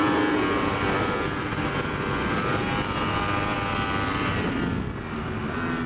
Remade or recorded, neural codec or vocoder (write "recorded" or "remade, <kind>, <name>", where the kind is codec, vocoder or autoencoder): recorded